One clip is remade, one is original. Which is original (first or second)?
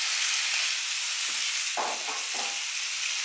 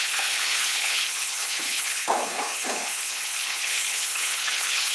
first